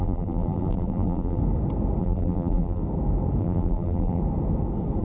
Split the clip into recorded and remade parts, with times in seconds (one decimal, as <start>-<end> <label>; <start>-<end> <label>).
0.0-1.4 remade; 1.4-2.0 recorded; 2.0-2.8 remade; 2.8-3.4 recorded; 3.4-4.2 remade; 4.2-5.0 recorded